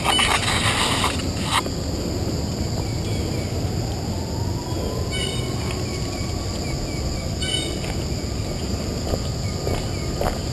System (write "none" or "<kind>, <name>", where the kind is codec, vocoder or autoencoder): none